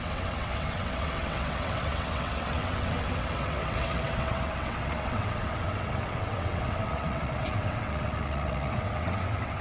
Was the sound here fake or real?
fake